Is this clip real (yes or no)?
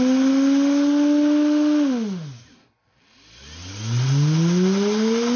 yes